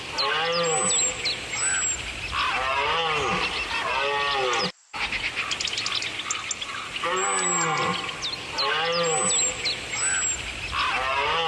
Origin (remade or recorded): recorded